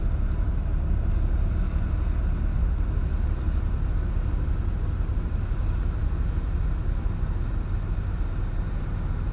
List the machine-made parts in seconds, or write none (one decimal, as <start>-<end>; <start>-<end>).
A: none